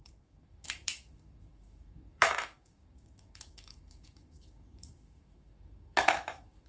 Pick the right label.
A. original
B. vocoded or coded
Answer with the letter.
B